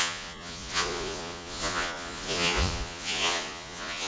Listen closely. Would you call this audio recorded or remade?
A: remade